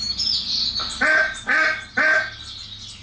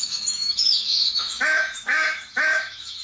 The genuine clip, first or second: first